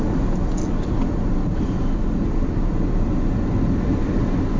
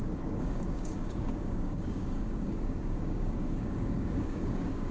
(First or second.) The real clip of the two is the first